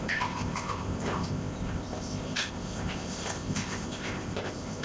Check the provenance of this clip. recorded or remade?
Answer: remade